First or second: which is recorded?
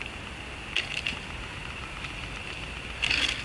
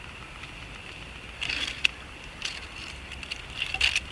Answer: first